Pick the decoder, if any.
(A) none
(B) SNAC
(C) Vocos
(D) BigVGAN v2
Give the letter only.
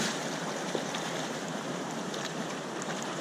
D